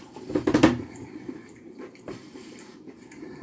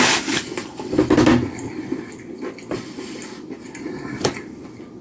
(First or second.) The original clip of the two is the second